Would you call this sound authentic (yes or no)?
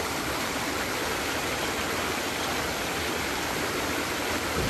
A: yes